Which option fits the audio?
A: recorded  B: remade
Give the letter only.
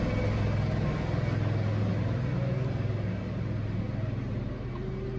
A